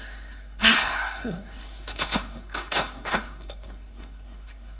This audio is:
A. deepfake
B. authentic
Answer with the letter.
A